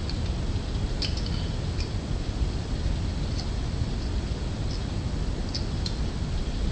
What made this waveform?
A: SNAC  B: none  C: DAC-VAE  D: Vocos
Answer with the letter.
B